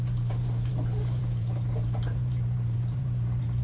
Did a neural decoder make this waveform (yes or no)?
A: yes